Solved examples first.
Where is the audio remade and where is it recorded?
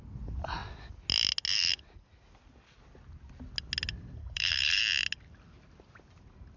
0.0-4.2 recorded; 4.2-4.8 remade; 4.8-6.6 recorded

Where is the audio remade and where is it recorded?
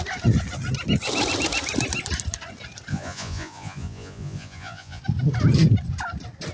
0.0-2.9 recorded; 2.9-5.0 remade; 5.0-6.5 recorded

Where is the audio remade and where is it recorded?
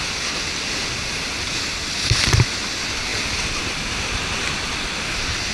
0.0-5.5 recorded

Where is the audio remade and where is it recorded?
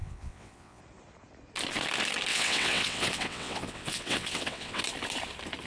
0.0-0.8 remade; 0.8-2.3 recorded; 2.3-4.8 remade; 4.8-5.7 recorded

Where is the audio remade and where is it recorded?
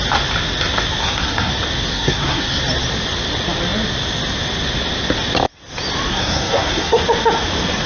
0.0-1.0 recorded; 1.0-1.5 remade; 1.5-1.9 recorded; 1.9-2.6 remade; 2.6-6.1 recorded; 6.1-7.0 remade; 7.0-7.9 recorded